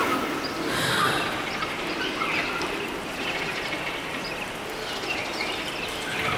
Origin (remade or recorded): recorded